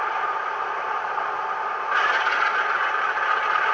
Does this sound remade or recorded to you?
recorded